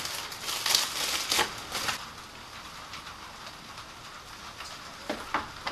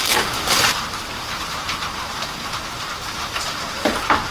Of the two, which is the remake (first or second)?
second